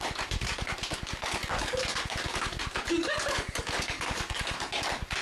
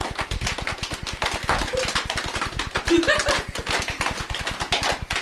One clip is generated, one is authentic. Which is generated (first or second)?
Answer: first